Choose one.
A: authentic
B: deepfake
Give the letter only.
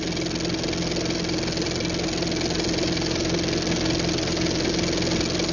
A